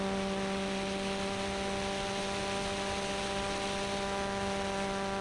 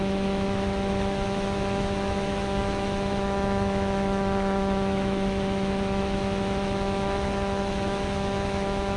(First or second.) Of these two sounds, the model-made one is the second